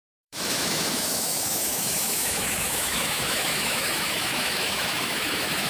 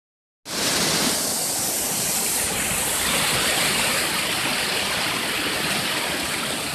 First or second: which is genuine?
second